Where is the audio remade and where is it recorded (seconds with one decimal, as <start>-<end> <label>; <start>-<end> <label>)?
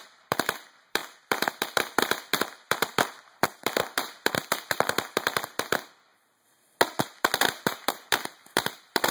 0.0-6.1 remade; 6.1-7.4 recorded; 7.4-9.1 remade